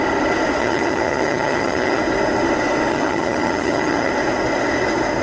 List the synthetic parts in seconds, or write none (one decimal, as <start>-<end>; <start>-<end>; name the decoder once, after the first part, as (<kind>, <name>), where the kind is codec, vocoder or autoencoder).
0.6-2.0 (vocoder, HiFi-GAN); 2.9-4.1